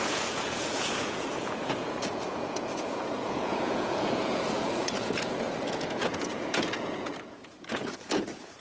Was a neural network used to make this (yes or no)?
yes